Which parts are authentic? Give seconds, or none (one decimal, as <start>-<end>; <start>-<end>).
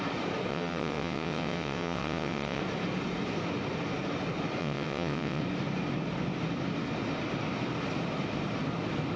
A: 0.0-0.5; 2.6-4.6; 5.4-9.2